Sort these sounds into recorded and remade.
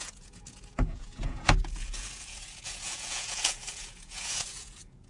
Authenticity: remade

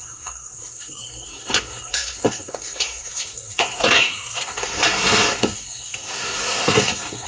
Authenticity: remade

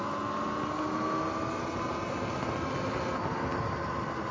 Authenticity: recorded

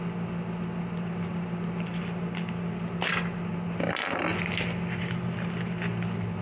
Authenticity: recorded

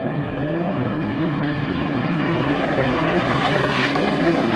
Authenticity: remade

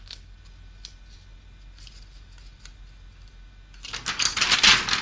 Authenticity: recorded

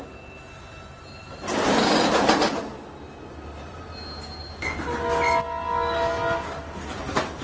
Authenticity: recorded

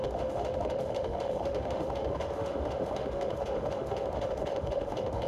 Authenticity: remade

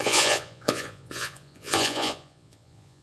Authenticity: remade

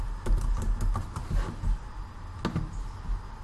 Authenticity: recorded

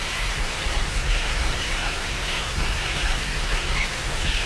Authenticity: remade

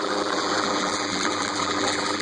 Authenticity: remade